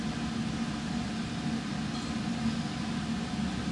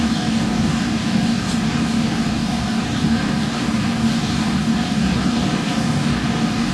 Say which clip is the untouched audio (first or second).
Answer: first